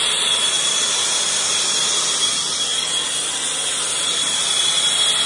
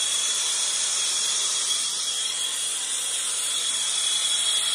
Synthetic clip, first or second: second